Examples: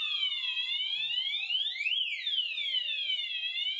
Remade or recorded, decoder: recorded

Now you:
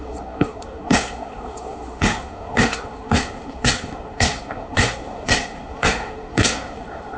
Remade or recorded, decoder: remade, codec, SNAC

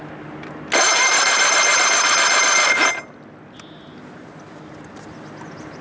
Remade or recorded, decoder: recorded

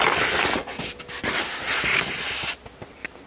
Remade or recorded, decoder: recorded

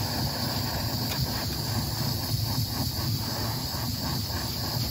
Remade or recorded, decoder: recorded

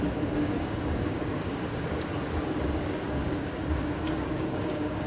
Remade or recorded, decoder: remade, codec, DAC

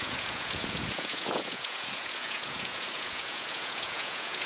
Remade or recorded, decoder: remade, vocoder, Vocos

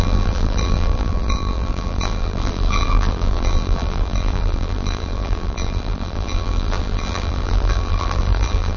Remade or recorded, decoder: remade, vocoder, BigVGAN v2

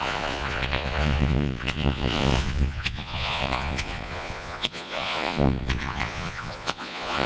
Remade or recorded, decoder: remade, vocoder, Vocos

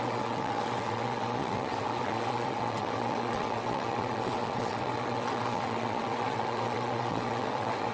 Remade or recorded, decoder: remade, vocoder, WaveNeXt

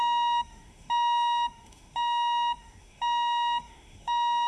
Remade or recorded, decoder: remade, autoencoder, DAC-VAE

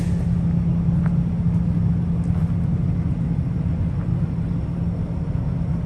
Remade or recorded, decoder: recorded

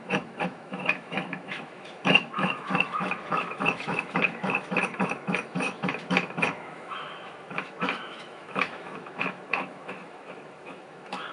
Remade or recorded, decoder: remade, autoencoder, DAC-VAE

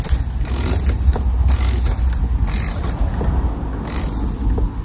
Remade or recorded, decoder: recorded